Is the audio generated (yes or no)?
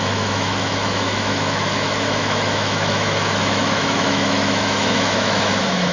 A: yes